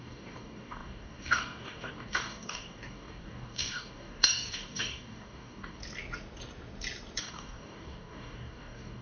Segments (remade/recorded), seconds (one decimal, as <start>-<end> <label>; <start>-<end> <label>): 0.0-5.8 remade; 5.8-7.2 recorded; 7.2-9.0 remade